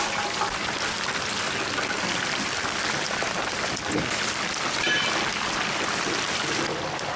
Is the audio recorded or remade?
recorded